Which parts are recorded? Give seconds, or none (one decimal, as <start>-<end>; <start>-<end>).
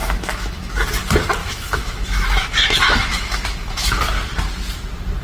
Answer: 0.7-1.4; 4.0-5.2